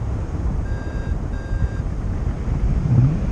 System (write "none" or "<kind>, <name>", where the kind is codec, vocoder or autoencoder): vocoder, BigVGAN v2